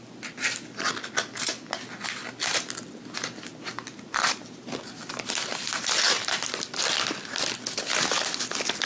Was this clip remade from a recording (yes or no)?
no